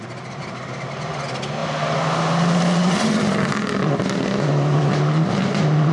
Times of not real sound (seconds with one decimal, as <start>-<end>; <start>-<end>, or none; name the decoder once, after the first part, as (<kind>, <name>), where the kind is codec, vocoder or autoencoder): none

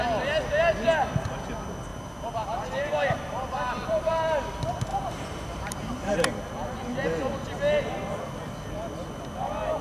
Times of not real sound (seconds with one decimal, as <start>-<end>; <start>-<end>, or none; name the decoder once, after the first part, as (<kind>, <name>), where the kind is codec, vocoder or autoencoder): 1.9-4.1 (vocoder, BigVGAN v2); 4.9-6.1

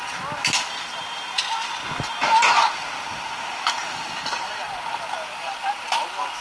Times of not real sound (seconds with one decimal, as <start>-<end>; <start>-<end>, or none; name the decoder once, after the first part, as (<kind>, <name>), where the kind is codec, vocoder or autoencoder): 3.8-4.5 (vocoder, BigVGAN v2); 5.3-6.4

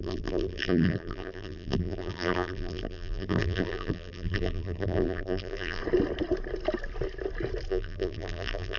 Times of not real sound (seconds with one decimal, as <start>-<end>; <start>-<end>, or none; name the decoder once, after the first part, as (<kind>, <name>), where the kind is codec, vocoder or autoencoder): 0.0-5.8 (vocoder, BigVGAN v2); 7.7-8.8